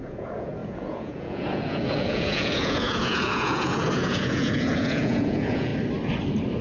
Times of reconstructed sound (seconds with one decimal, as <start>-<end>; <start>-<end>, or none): 0.0-5.7